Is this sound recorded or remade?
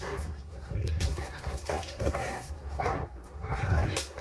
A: remade